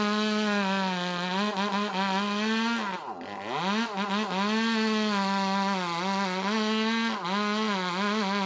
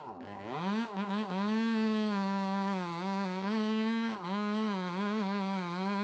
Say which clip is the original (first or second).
first